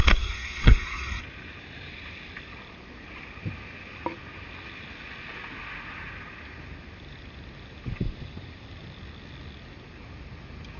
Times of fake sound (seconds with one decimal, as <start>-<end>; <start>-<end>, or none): 0.0-1.2